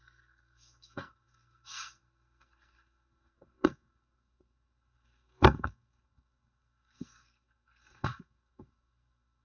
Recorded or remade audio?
remade